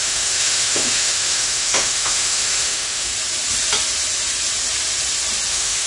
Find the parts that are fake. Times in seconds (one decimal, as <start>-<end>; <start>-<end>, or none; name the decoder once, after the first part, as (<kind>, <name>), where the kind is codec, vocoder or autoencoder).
0.0-3.1 (autoencoder, DAC-VAE); 5.5-5.9